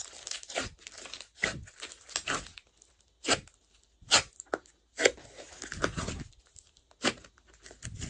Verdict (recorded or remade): recorded